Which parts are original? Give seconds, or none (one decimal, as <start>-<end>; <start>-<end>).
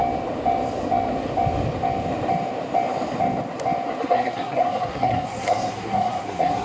0.0-4.0